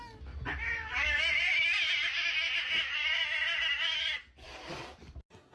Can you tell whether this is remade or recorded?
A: recorded